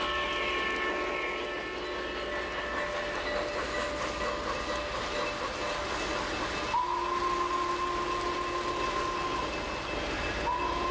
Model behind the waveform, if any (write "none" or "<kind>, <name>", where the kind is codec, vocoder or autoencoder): none